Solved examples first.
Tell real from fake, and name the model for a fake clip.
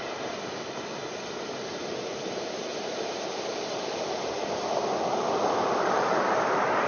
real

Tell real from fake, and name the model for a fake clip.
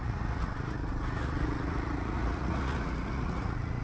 fake, vocoder, Vocos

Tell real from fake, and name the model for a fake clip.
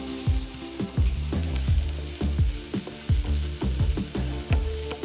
real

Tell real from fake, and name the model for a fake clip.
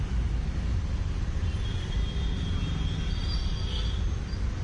real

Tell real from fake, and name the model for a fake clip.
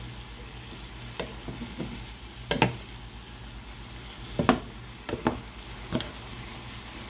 real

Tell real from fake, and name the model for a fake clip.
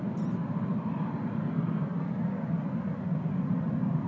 real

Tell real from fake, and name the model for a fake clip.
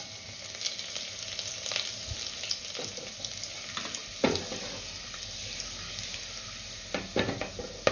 real